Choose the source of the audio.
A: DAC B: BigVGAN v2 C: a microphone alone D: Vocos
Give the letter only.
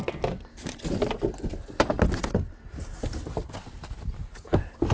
C